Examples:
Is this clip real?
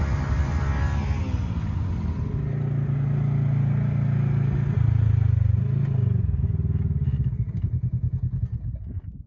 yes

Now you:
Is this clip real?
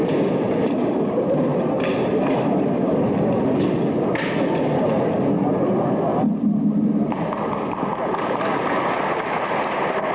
yes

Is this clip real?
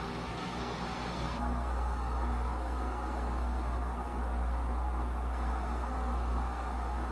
no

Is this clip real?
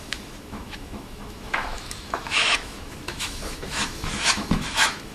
no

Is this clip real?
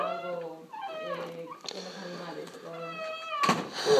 yes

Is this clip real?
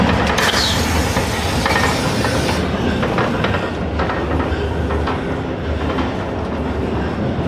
yes